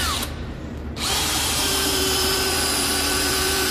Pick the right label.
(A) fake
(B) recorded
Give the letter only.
A